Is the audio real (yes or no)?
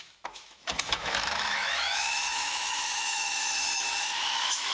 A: no